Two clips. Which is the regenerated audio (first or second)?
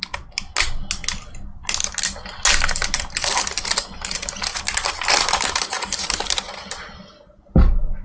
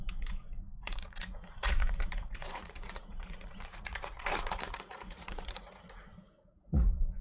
second